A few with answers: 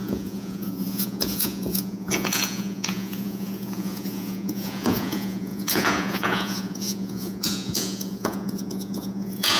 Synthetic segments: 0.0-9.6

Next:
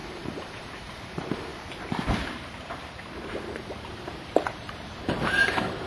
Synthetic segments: 0.0-5.9

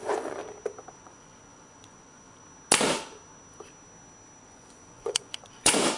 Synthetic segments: 0.0-0.4; 1.0-2.4; 4.4-6.0

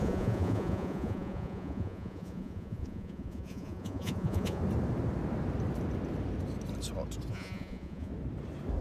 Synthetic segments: 0.0-4.6; 7.3-8.1

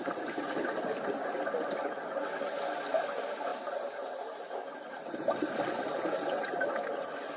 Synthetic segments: none

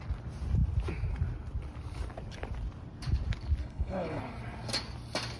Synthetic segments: 3.6-4.2

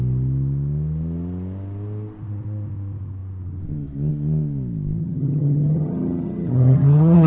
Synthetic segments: 5.0-7.3

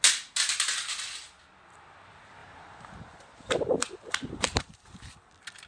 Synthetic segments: 2.4-4.7